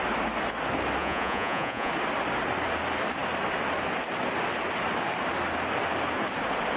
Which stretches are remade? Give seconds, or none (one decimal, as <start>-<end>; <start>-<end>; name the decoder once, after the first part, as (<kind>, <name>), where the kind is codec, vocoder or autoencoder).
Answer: 1.0-1.9 (vocoder, Vocos)